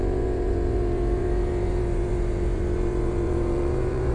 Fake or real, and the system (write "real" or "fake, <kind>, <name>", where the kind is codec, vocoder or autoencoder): fake, vocoder, Vocos